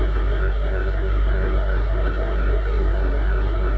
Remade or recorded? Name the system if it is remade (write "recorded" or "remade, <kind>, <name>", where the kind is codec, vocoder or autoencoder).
remade, codec, SNAC